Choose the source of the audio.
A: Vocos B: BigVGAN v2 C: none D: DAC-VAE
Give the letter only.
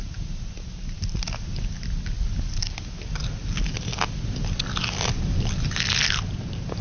C